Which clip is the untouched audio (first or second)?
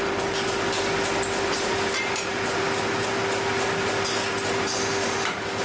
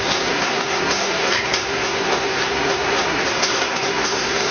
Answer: first